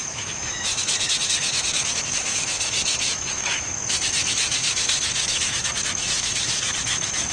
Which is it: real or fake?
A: fake